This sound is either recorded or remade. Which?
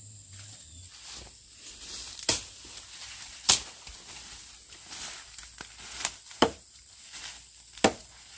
recorded